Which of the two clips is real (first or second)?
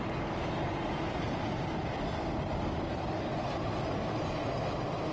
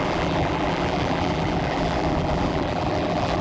first